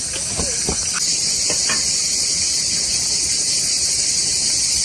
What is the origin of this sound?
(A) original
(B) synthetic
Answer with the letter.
A